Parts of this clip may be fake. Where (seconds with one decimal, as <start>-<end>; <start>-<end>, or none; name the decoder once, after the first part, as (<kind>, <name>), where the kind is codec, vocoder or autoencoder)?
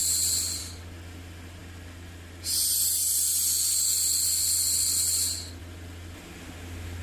none